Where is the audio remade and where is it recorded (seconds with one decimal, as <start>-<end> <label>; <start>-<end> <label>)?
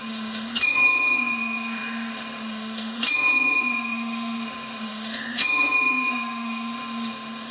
0.0-7.5 remade